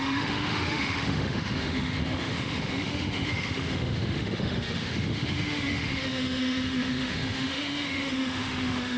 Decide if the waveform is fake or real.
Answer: fake